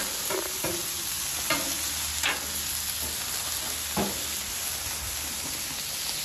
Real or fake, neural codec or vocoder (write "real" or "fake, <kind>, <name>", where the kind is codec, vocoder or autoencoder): real